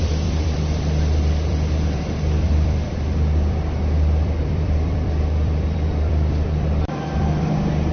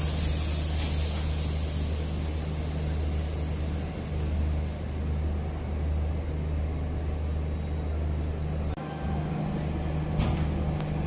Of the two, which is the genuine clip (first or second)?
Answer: second